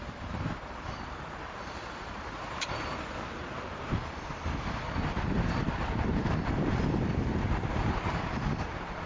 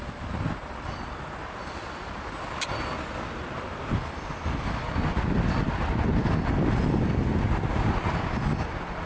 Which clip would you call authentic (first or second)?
second